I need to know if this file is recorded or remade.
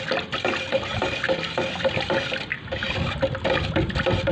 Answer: recorded